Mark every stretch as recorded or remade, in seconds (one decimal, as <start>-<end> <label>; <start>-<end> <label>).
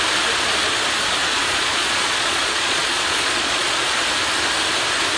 0.0-1.2 recorded; 1.2-4.0 remade; 4.0-5.2 recorded